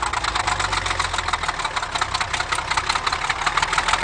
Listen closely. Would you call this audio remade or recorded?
recorded